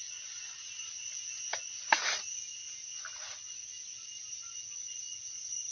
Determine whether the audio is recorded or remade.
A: recorded